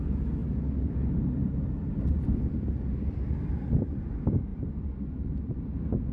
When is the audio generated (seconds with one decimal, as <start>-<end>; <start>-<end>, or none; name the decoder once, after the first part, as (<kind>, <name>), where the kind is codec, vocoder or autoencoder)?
4.5-6.1 (vocoder, BigVGAN v2)